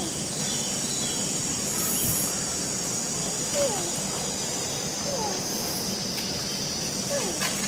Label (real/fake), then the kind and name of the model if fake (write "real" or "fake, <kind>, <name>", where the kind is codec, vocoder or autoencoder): real